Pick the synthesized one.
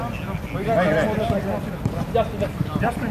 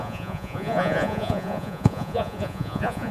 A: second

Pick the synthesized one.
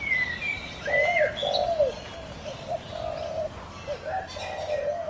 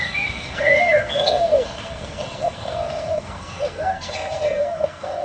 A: second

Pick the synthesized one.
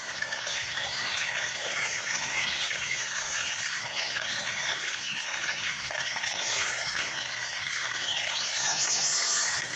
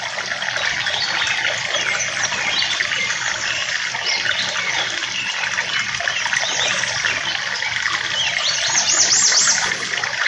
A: first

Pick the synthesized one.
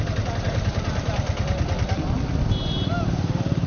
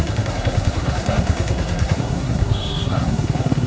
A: second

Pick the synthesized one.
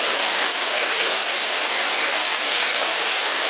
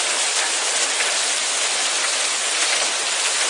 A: first